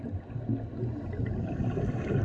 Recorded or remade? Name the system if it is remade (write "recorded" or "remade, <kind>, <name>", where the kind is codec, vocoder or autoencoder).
recorded